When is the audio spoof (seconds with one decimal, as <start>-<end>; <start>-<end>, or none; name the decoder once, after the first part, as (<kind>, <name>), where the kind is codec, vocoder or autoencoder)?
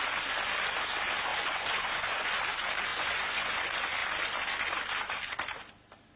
1.3-2.4 (vocoder, Vocos); 2.9-3.6